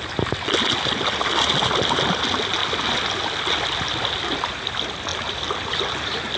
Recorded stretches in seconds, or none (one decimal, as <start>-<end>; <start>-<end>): 0.0-6.4